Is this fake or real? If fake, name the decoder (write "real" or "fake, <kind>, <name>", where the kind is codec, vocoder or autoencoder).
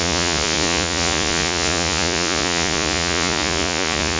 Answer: fake, vocoder, Vocos